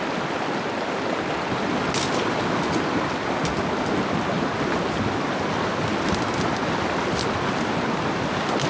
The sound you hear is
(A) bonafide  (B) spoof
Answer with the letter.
A